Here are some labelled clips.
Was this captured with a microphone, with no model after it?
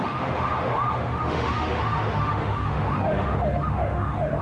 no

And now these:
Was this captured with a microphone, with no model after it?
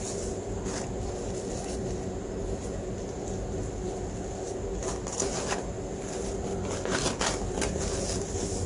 yes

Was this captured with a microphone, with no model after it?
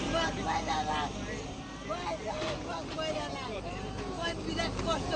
no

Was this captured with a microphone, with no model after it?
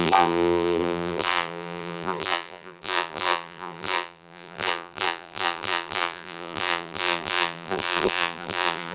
no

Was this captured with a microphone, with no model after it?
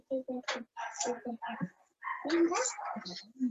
yes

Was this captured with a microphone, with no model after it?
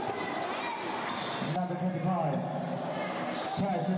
yes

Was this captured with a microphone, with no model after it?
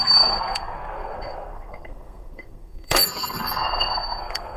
no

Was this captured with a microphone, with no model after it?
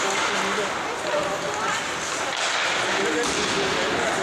yes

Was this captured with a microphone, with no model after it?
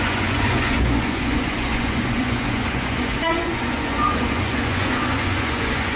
no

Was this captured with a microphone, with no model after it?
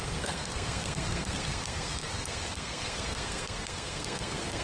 no